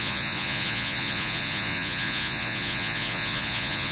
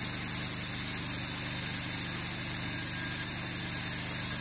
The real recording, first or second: second